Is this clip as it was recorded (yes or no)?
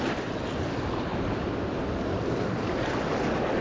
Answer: yes